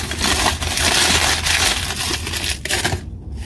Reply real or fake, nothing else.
real